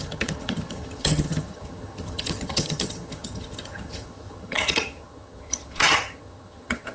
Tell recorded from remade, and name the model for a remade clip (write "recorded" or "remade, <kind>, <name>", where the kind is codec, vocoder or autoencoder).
remade, vocoder, HiFi-GAN